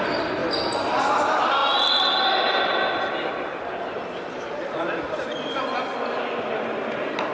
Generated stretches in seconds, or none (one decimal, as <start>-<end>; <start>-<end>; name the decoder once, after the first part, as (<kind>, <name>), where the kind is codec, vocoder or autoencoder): none